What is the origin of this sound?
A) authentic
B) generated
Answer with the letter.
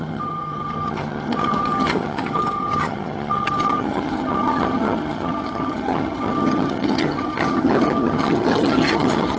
B